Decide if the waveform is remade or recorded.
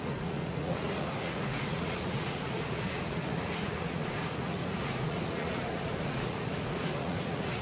remade